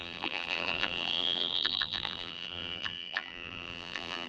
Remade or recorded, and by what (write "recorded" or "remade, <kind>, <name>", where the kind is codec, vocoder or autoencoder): remade, vocoder, BigVGAN v2